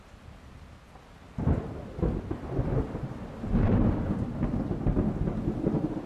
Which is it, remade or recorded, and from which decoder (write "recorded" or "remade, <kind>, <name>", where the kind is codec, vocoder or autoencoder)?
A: recorded